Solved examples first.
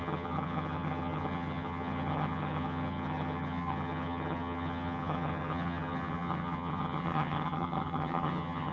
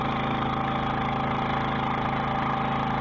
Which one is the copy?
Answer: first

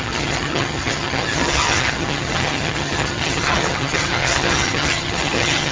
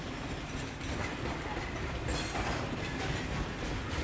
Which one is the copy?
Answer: first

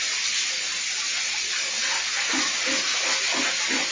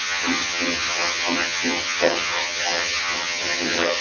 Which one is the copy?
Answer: second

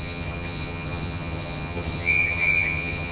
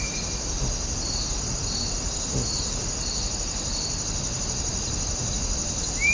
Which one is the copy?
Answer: first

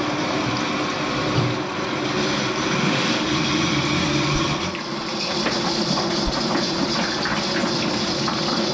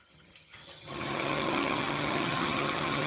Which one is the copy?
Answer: second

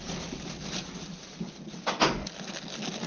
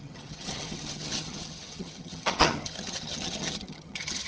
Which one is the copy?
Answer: second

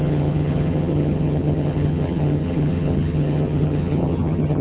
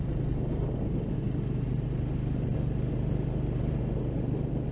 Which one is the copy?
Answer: first